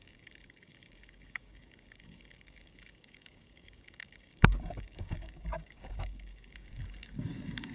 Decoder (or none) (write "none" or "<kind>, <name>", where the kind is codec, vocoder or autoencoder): codec, DAC